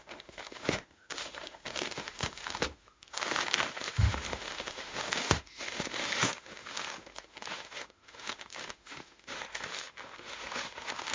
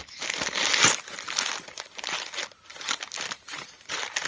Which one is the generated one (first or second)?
first